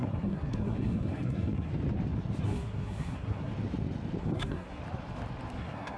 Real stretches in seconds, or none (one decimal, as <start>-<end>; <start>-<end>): 1.7-2.4; 3.5-4.2; 4.8-5.6